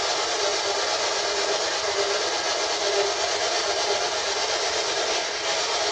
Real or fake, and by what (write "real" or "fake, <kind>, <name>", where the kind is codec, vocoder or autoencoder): real